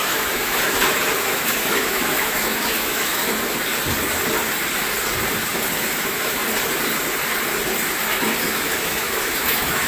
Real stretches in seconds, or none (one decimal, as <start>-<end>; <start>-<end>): 3.2-5.8; 6.4-8.0